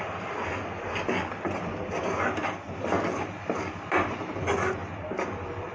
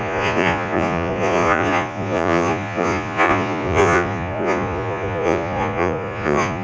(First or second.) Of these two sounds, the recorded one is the first